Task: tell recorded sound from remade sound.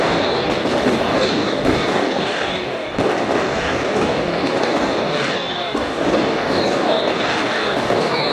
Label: remade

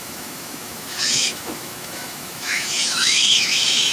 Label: remade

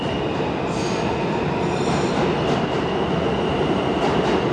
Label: recorded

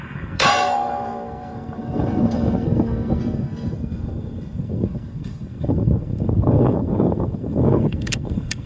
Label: remade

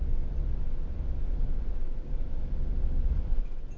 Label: recorded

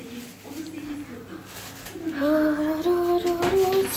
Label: recorded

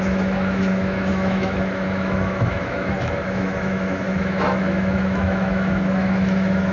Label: remade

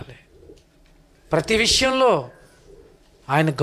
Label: remade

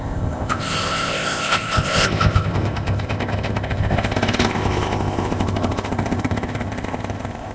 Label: remade